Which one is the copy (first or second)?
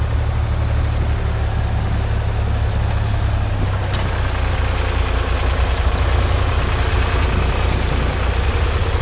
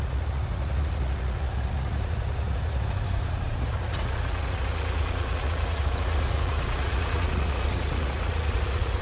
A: second